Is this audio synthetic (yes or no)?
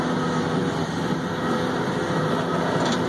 no